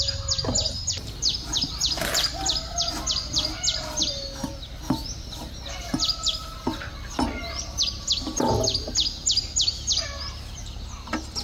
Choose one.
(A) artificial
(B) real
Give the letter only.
B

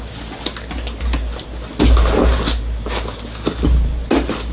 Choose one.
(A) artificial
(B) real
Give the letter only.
B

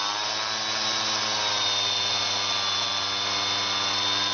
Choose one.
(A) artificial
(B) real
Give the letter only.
B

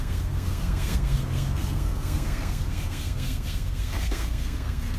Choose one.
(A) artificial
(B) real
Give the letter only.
A